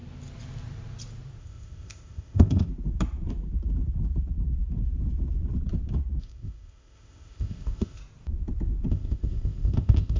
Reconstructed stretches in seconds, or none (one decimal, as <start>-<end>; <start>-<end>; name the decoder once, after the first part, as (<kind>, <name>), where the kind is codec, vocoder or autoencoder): 1.4-2.7 (codec, ZipCodec); 6.2-8.0; 8.9-10.2